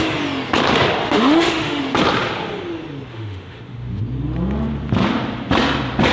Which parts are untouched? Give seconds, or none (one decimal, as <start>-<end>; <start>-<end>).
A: 0.0-1.0; 1.8-3.1; 4.0-6.1